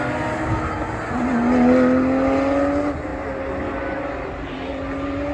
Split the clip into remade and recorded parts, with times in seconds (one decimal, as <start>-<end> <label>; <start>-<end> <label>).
0.0-5.3 recorded